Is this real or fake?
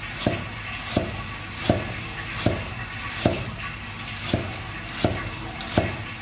real